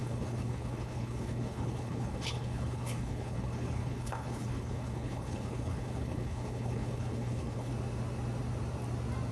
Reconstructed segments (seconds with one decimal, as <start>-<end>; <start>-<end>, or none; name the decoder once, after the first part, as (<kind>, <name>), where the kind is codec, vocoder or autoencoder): 0.0-7.7 (codec, HILCodec)